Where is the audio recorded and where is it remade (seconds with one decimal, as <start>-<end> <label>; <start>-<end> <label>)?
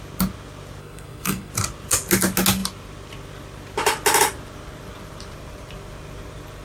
0.0-0.8 recorded; 0.8-1.5 remade; 1.5-6.6 recorded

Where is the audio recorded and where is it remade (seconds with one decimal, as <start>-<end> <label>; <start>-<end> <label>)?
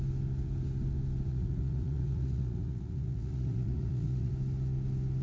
0.0-1.3 recorded; 1.3-4.3 remade; 4.3-5.2 recorded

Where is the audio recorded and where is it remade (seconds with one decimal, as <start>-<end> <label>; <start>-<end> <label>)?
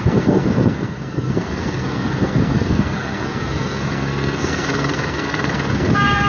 0.0-6.3 remade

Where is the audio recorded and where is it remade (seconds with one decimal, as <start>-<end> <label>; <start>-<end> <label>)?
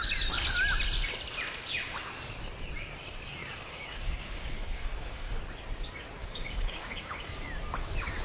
0.0-3.4 recorded; 3.4-5.3 remade; 5.3-6.2 recorded; 6.2-7.4 remade; 7.4-8.2 recorded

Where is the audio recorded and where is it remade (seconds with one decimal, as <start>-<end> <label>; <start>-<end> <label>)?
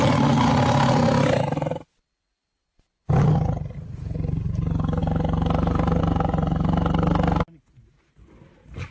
0.0-8.9 recorded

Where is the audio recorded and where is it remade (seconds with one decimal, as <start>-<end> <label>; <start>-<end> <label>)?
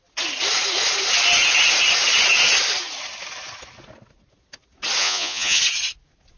0.0-5.0 recorded; 5.0-5.6 remade; 5.6-6.4 recorded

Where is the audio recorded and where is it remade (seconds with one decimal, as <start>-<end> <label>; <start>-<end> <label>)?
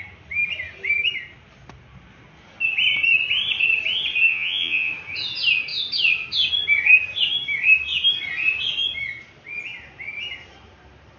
0.0-4.3 recorded; 4.3-4.9 remade; 4.9-11.2 recorded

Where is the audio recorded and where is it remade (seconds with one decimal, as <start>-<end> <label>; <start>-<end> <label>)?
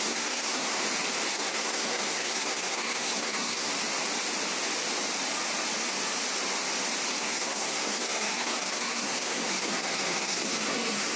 0.0-0.8 remade; 0.8-1.3 recorded; 1.3-3.7 remade; 3.7-7.2 recorded; 7.2-11.2 remade